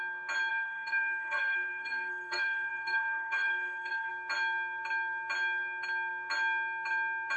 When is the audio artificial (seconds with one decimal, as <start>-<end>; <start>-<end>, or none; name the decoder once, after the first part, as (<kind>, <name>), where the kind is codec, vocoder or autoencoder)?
0.5-4.1 (codec, SNAC)